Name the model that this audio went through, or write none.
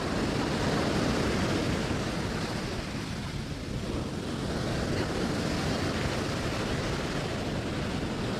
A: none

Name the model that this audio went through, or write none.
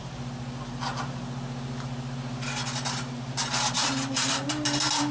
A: none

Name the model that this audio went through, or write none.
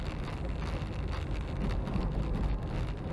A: none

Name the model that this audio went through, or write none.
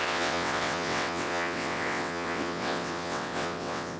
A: vocoder, WaveNeXt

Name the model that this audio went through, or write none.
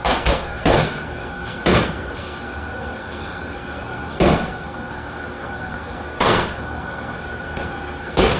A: codec, SNAC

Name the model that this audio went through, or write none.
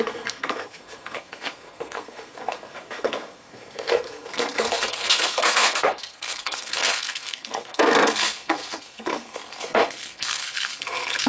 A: codec, SNAC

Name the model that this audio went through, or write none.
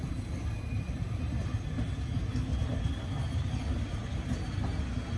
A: none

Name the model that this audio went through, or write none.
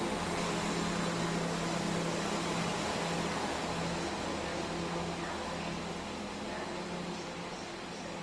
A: none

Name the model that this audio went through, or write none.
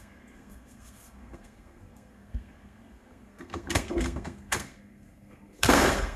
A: codec, SNAC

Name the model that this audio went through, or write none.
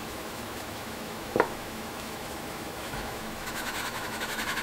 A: autoencoder, DAC-VAE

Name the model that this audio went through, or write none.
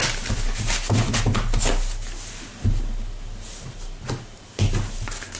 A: none